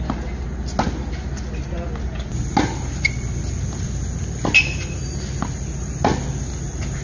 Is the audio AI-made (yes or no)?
no